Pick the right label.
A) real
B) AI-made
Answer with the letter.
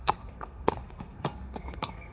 B